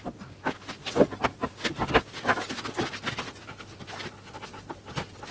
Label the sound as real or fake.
real